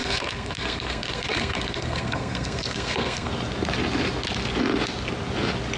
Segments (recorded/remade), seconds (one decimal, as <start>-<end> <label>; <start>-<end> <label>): 0.0-3.3 remade; 3.3-5.8 recorded